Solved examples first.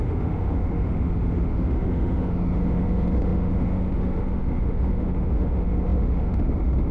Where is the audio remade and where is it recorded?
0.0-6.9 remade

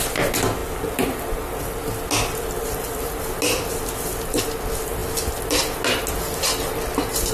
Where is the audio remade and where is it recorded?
0.0-7.3 recorded

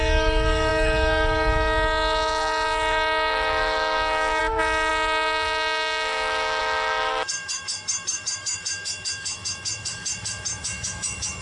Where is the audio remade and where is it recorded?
0.0-11.4 remade

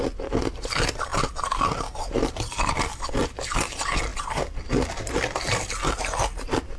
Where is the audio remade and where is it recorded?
0.0-6.8 recorded

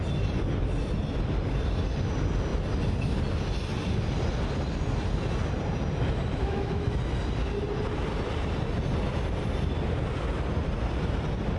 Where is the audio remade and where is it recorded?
0.0-6.4 recorded; 6.4-7.0 remade; 7.0-11.6 recorded